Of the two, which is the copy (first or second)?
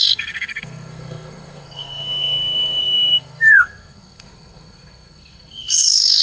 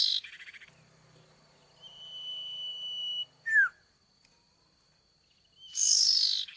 first